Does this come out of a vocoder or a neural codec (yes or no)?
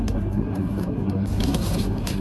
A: yes